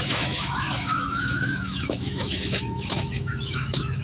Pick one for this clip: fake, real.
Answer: fake